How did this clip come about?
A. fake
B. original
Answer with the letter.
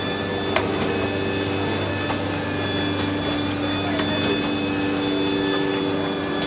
B